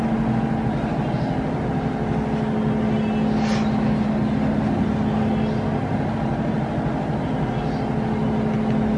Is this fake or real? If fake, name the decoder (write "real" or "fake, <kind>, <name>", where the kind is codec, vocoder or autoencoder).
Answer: real